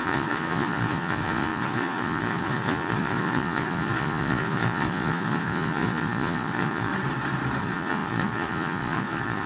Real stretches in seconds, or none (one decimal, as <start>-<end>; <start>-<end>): 6.9-7.6